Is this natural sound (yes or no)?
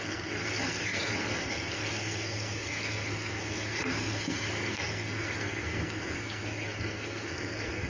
no